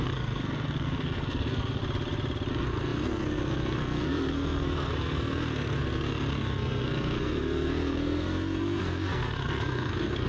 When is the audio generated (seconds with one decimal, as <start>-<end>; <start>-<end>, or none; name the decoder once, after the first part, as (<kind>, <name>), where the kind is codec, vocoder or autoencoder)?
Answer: 0.0-1.8 (codec, SNAC); 2.5-10.3